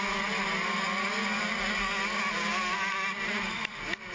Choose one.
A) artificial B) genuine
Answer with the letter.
B